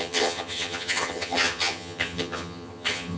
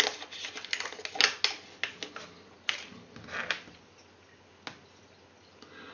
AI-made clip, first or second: first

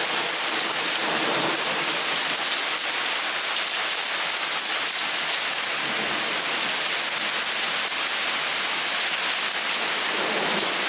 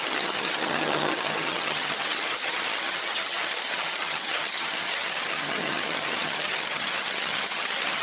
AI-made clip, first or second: second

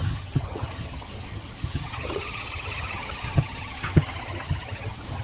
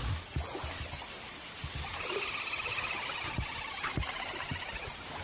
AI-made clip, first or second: first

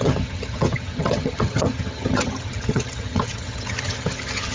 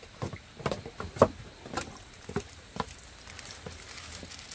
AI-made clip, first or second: first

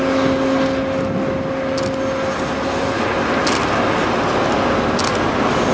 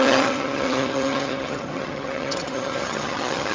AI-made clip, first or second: second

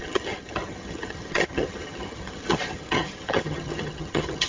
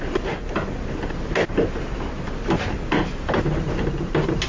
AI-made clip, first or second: first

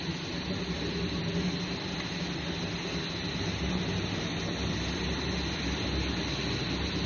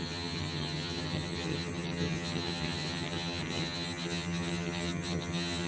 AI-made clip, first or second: second